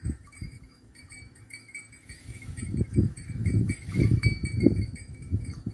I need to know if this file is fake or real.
fake